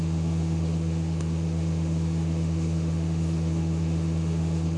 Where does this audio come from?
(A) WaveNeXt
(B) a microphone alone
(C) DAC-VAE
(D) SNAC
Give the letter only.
C